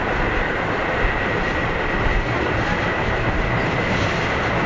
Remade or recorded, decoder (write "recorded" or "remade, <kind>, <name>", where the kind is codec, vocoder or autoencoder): recorded